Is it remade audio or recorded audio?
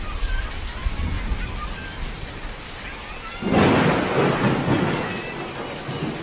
recorded